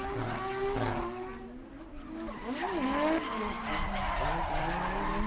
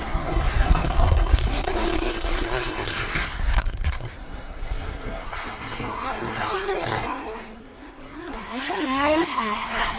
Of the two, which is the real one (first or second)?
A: first